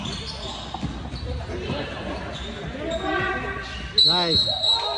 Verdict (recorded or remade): recorded